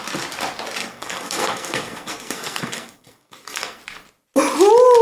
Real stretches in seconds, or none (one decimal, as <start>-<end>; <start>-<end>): 0.0-0.8; 3.8-5.0